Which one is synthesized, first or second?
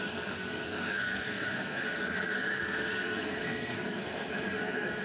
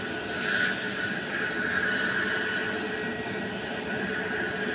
first